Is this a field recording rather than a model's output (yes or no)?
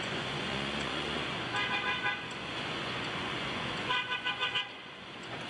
no